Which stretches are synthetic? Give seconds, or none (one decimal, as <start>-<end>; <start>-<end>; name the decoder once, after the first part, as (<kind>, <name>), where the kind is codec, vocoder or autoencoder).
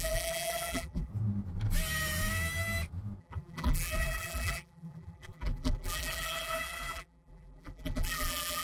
0.0-1.1 (vocoder, BigVGAN v2); 3.2-8.6